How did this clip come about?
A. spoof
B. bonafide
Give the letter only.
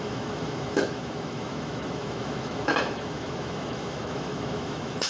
A